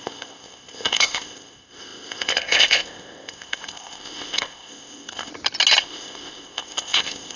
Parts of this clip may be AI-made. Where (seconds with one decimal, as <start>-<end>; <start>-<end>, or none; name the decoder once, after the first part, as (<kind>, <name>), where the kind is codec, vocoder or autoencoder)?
0.0-5.3 (codec, ZipCodec); 5.8-7.4